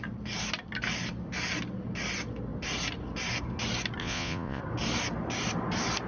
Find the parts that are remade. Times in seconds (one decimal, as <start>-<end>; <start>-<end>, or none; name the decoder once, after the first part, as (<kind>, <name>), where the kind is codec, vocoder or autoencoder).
4.0-4.6 (vocoder, Vocos)